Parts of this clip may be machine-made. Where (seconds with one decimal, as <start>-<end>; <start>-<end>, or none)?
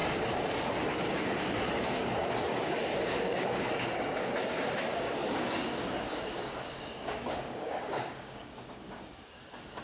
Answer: 2.5-3.7; 4.4-9.8